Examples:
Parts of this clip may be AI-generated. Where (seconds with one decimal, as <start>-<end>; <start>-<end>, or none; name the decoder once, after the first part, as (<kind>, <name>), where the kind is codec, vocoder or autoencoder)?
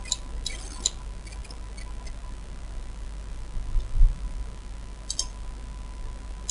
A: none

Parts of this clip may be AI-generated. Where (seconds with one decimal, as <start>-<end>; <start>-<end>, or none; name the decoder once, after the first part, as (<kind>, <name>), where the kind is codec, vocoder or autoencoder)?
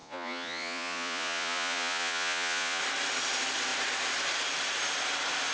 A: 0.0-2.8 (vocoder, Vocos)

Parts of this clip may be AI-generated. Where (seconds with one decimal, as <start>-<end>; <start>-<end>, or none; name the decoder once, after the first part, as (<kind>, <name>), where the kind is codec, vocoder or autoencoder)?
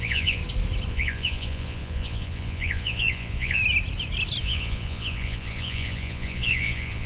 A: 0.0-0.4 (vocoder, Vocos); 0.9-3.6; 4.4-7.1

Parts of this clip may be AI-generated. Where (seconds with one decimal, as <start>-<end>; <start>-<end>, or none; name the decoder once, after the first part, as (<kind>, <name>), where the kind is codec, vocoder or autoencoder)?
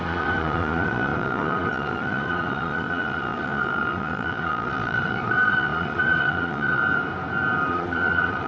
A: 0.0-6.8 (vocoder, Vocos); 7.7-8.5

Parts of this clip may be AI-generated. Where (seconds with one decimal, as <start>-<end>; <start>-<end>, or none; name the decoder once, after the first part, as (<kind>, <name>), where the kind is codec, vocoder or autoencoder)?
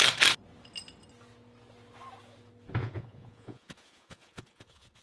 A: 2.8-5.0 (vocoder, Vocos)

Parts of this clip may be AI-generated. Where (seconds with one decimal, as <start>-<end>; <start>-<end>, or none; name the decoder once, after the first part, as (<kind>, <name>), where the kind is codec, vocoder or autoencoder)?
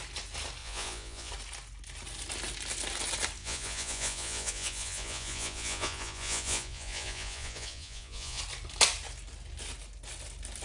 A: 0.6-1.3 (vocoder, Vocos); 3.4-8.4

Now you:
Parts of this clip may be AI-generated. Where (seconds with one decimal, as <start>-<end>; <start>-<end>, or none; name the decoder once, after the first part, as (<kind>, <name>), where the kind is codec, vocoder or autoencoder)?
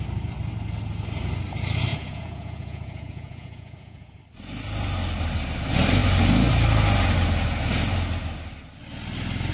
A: 1.9-4.2 (vocoder, Vocos)